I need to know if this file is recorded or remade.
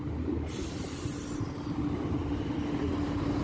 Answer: recorded